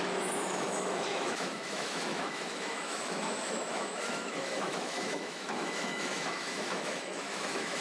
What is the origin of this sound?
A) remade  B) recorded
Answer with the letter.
A